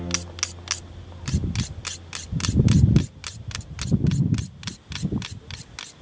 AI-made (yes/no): no